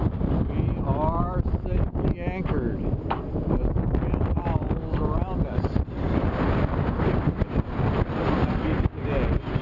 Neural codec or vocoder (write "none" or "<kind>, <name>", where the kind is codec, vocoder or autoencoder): none